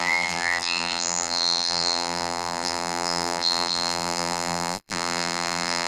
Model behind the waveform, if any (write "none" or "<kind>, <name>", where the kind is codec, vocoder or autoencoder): vocoder, BigVGAN v2